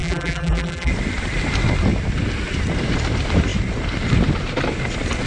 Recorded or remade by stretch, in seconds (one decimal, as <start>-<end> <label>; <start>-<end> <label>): 0.0-0.9 remade; 0.9-5.3 recorded